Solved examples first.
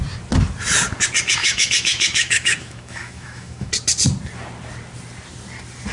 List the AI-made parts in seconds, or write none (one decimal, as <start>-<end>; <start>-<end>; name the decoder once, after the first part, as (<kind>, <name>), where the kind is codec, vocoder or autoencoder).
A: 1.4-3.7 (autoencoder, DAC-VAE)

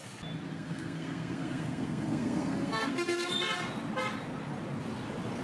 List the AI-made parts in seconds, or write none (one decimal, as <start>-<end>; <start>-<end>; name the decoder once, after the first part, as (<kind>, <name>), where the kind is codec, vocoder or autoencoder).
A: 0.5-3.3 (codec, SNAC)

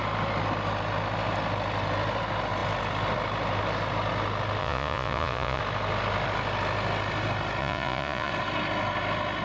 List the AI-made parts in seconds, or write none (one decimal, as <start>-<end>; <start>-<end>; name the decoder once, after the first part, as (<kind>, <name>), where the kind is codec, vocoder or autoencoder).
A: 4.6-5.6 (vocoder, Vocos); 7.6-8.3

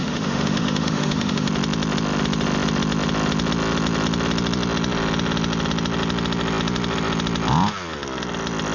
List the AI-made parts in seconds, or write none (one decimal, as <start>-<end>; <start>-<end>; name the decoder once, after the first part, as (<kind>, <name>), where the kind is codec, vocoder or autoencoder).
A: 0.0-1.5 (autoencoder, DAC-VAE)

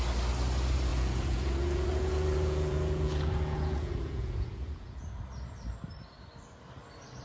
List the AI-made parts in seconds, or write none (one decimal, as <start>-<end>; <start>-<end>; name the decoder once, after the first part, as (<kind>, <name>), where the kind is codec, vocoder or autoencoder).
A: 0.9-5.2 (vocoder, Vocos)

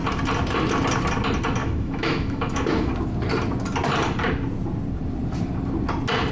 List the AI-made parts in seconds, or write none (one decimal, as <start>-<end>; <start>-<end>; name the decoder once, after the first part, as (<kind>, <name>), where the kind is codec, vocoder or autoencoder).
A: 1.6-2.9 (autoencoder, DAC-VAE)

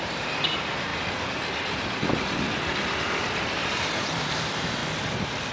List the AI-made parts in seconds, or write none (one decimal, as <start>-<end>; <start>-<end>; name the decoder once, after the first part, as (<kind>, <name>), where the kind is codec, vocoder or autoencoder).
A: 0.0-0.9 (vocoder, BigVGAN v2); 3.5-4.8

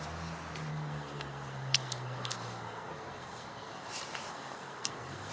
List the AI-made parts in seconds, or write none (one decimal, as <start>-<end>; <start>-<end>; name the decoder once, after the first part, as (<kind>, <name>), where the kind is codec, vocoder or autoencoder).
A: 0.7-3.9 (codec, SNAC); 4.3-5.3